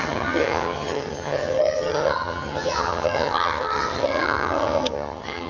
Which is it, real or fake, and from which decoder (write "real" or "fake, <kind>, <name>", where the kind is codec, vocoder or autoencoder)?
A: fake, vocoder, HiFi-GAN